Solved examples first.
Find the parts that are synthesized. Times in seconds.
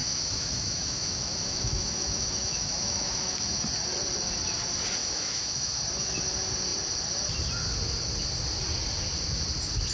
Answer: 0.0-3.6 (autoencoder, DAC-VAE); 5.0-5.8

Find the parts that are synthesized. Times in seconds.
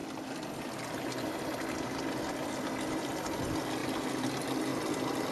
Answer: 0.0-3.2 (vocoder, BigVGAN v2); 3.8-4.3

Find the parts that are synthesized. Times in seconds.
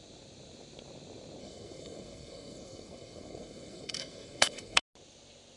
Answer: 1.4-4.8 (codec, SNAC)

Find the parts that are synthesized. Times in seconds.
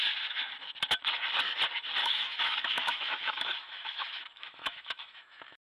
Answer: 2.0-5.8 (autoencoder, DAC-VAE)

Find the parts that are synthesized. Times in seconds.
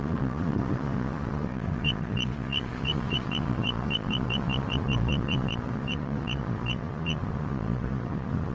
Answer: 0.0-8.5 (vocoder, Vocos)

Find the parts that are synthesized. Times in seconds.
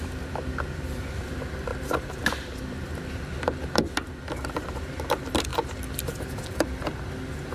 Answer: 0.0-5.5 (vocoder, BigVGAN v2); 6.2-7.5